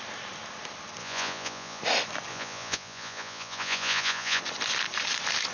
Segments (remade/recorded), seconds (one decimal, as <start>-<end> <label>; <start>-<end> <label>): 0.0-1.0 recorded; 1.0-1.8 remade; 1.8-2.3 recorded; 2.3-4.4 remade; 4.4-5.5 recorded